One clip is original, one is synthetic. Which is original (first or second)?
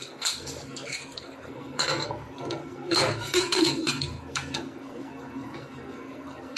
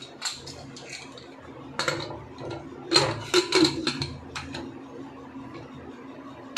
second